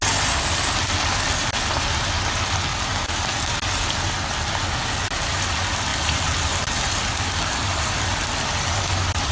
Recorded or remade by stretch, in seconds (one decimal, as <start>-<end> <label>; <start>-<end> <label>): 0.0-9.3 recorded